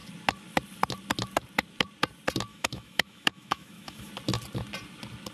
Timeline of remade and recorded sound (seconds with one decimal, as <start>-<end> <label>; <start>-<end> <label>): 0.0-2.5 recorded; 2.5-4.1 remade; 4.1-5.3 recorded